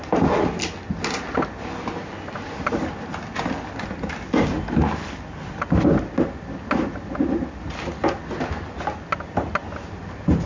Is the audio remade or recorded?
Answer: recorded